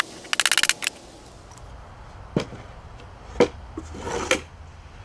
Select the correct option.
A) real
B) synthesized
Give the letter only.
A